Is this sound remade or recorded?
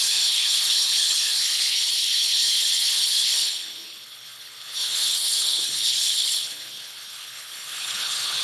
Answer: remade